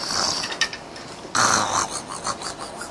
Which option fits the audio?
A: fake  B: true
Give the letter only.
B